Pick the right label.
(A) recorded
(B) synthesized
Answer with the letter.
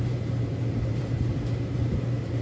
B